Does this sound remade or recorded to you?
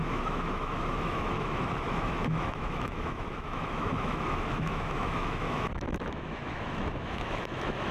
remade